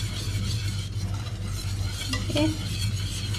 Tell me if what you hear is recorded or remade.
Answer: recorded